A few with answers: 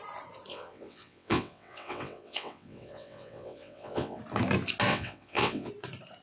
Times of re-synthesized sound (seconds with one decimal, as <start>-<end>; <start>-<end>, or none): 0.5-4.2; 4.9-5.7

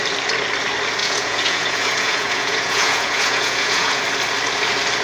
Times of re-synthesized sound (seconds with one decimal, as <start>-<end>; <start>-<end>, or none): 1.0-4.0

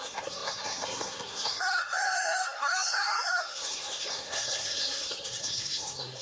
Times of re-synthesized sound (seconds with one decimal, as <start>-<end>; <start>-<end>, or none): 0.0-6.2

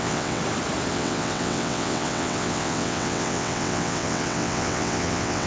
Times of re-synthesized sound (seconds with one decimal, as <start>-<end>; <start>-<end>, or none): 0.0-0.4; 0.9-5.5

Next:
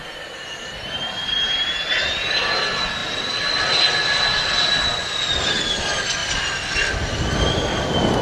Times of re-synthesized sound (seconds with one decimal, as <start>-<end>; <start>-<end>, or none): none

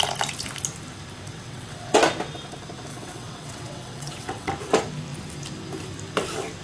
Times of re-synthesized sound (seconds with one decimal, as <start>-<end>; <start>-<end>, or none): 1.3-2.0; 2.9-4.5

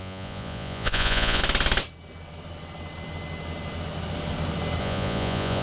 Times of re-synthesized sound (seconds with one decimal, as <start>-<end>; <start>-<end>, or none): 0.0-1.4; 4.8-5.6

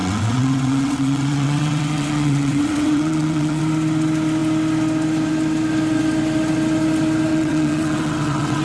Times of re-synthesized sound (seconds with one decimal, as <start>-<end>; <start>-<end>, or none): 0.0-3.6; 7.3-8.6